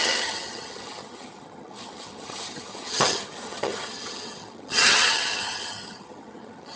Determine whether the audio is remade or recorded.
remade